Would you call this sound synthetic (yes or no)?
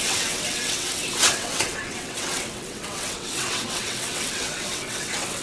yes